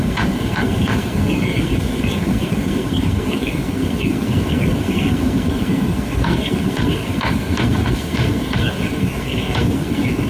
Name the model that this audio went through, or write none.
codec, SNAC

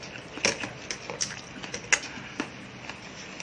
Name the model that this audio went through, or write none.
none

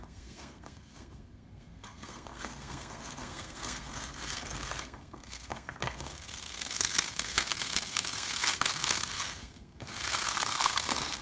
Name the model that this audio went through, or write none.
codec, SNAC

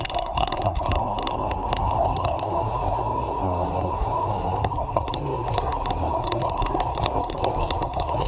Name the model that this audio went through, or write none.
codec, SNAC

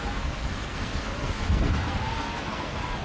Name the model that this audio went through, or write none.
codec, SNAC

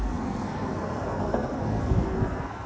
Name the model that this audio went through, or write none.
codec, SNAC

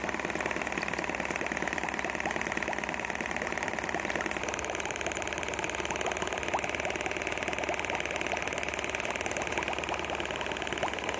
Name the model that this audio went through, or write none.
none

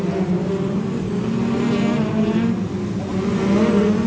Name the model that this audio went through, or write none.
none